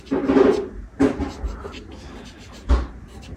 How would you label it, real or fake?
real